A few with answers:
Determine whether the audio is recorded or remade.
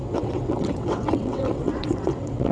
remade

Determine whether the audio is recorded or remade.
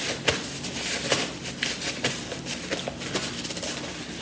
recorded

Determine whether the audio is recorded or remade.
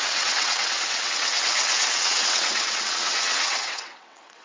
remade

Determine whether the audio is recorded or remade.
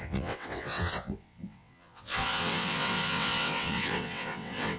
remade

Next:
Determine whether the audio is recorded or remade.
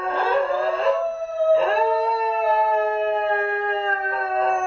recorded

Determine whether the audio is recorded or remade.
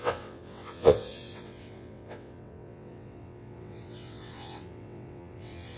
remade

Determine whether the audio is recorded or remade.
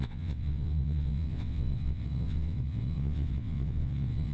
remade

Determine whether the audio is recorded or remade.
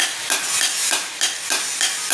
recorded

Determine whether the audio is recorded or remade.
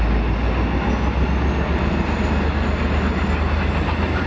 recorded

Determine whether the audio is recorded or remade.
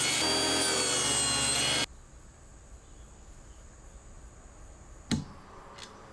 recorded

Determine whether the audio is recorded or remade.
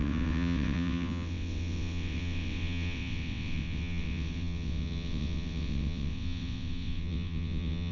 remade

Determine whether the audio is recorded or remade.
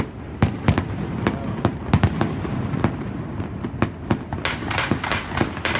recorded